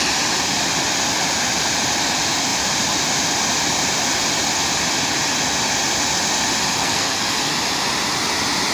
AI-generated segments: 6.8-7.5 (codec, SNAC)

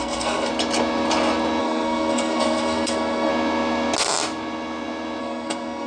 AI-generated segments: 0.0-0.5 (codec, SNAC); 1.6-3.3; 5.2-5.9

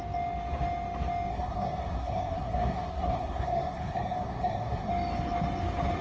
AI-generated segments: 1.3-4.9 (codec, SNAC)

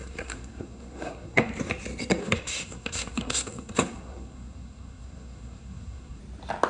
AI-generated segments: 0.0-1.7 (codec, SNAC); 2.2-6.2

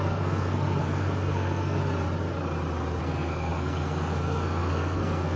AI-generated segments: 0.0-1.8 (codec, SNAC); 3.0-5.4